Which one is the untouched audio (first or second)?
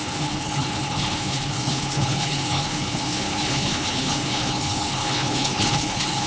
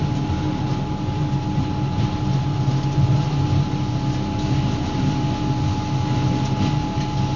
second